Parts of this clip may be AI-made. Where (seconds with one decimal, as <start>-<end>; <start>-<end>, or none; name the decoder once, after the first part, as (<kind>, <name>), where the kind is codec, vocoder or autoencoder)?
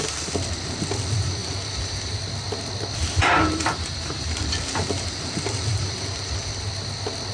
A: 1.4-2.2 (vocoder, BigVGAN v2); 3.0-6.5